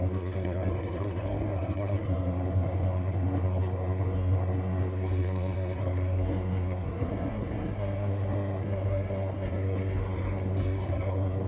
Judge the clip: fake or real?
fake